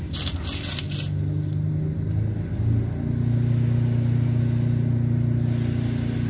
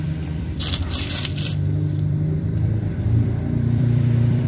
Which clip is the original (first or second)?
first